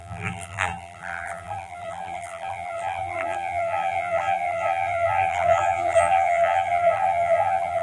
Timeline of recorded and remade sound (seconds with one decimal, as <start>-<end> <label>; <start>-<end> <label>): 0.0-7.8 remade